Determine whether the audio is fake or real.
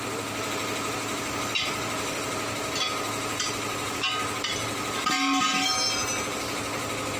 real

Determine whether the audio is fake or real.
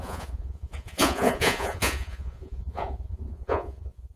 fake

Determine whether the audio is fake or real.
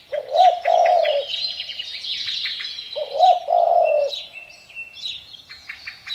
fake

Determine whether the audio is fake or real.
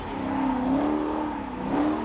real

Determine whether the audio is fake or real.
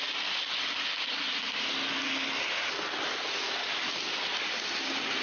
real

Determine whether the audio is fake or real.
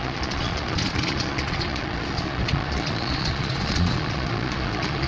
fake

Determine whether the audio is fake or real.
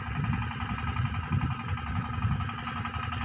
real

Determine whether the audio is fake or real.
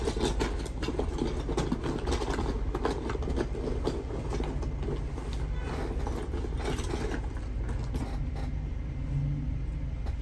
real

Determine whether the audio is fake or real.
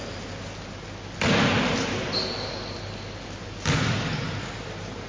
real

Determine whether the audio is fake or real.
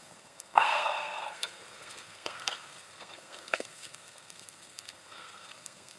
fake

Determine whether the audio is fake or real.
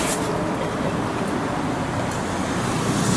real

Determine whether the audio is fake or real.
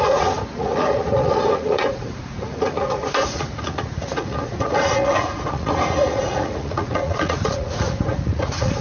fake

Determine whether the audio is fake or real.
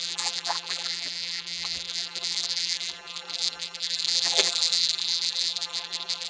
fake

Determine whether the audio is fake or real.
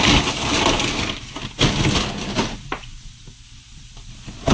real